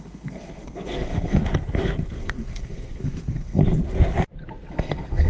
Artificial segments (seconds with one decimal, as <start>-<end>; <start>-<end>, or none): 0.0-1.4; 2.1-3.6; 4.7-5.3